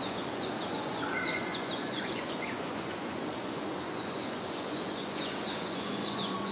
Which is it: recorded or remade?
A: remade